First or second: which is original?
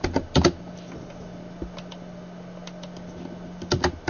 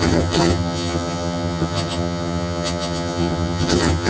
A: first